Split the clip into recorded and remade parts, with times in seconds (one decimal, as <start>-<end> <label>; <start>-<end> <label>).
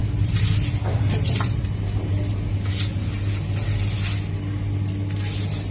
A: 0.0-5.7 recorded